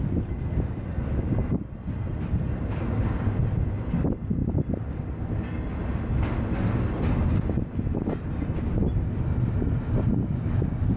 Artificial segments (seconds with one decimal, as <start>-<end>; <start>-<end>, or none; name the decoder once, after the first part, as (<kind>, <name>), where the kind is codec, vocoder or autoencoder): 4.4-5.2 (vocoder, BigVGAN v2)